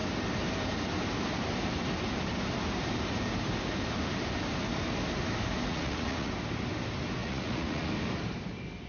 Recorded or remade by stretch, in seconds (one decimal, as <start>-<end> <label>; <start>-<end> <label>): 0.0-5.7 recorded; 5.7-6.3 remade; 6.3-7.2 recorded; 7.2-7.9 remade; 7.9-8.9 recorded